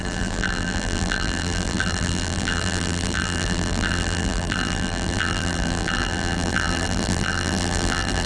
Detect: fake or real fake